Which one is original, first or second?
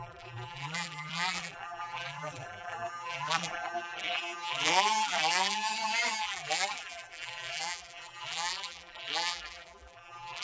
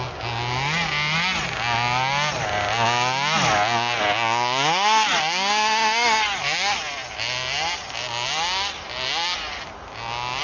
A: second